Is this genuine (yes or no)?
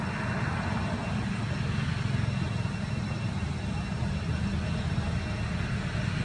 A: yes